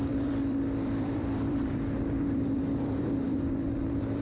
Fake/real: fake